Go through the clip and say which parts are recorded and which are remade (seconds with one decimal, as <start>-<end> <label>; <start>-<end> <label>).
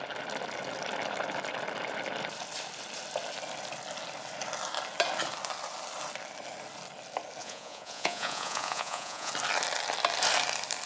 0.0-7.4 recorded; 7.4-9.3 remade; 9.3-10.9 recorded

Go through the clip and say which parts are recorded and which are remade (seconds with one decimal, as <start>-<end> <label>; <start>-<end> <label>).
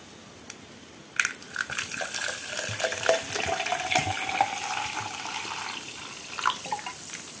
0.0-7.4 recorded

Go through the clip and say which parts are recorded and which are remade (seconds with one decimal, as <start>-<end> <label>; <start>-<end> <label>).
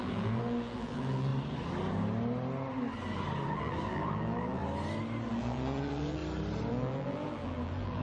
0.0-1.3 remade; 1.3-3.5 recorded; 3.5-4.6 remade; 4.6-5.3 recorded; 5.3-6.2 remade; 6.2-6.7 recorded; 6.7-8.0 remade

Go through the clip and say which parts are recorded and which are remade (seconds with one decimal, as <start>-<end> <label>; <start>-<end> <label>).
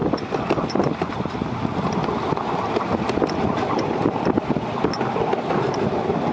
0.0-6.3 recorded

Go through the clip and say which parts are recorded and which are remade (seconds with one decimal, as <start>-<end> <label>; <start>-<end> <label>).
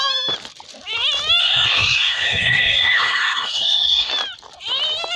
0.0-1.4 recorded; 1.4-4.1 remade; 4.1-5.2 recorded